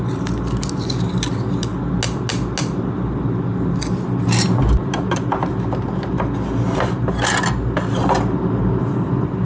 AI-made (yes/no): no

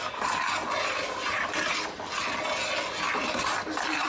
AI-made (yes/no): no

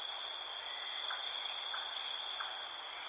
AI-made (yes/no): no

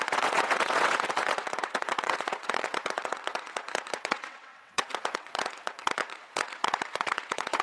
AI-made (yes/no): yes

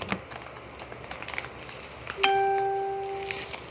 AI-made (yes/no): no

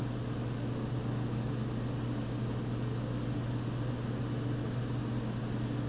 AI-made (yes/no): no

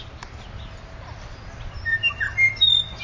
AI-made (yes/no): no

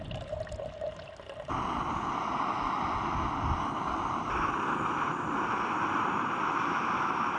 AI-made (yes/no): no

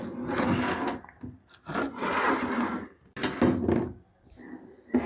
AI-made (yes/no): no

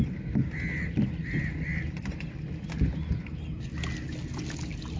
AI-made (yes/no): no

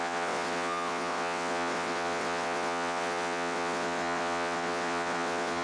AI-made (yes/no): yes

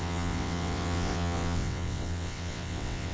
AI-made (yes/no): yes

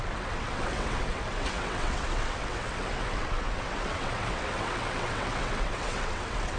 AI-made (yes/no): yes